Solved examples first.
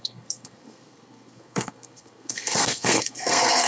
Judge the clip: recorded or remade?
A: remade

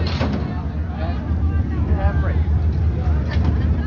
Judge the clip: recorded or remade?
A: recorded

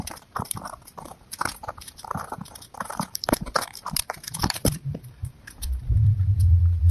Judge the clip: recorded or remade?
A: remade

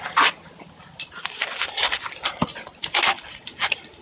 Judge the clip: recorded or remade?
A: remade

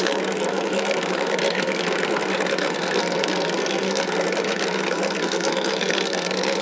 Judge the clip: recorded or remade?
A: remade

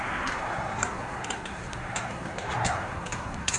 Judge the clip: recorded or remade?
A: remade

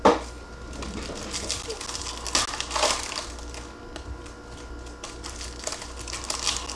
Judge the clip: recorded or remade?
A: recorded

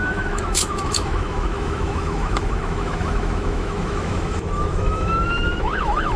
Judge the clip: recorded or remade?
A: remade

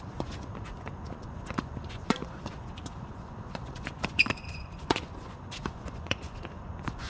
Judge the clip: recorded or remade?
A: remade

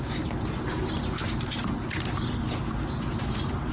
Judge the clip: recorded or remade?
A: recorded